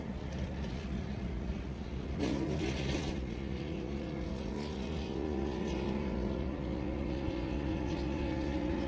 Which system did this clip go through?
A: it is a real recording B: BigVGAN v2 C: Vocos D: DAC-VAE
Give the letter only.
C